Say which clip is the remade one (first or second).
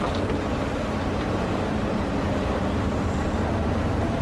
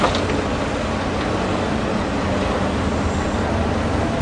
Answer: first